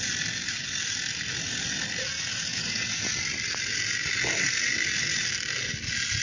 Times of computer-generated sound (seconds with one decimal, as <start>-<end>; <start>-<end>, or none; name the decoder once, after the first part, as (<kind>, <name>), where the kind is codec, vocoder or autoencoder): 2.5-3.1 (vocoder, Vocos)